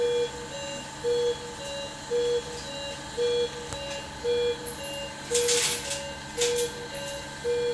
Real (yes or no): yes